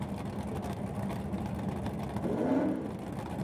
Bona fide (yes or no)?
yes